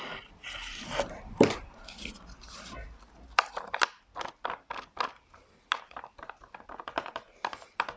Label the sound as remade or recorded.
recorded